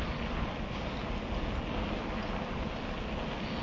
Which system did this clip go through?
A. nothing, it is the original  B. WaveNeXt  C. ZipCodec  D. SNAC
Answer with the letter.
A